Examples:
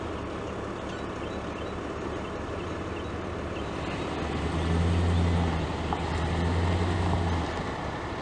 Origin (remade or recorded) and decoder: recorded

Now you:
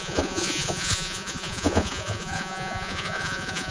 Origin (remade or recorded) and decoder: remade, vocoder, Vocos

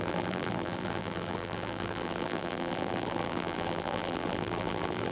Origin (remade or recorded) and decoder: remade, vocoder, BigVGAN v2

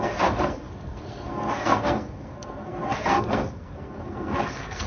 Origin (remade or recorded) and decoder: remade, codec, SNAC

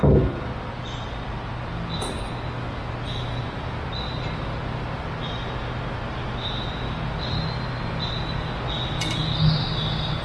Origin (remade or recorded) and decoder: recorded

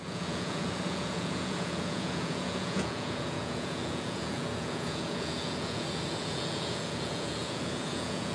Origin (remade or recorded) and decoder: remade, vocoder, Vocos